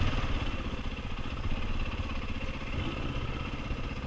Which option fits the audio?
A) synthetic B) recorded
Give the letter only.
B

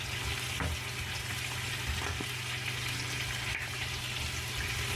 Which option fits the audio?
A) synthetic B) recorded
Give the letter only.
B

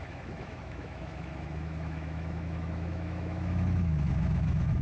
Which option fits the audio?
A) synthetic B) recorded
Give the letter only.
A